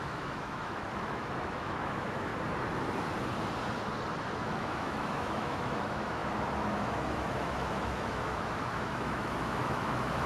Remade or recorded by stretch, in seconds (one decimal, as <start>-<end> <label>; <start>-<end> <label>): 0.0-2.3 remade; 2.3-4.4 recorded; 4.4-10.3 remade